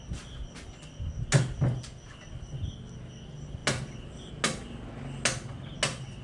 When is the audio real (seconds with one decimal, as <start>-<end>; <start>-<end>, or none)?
0.0-6.2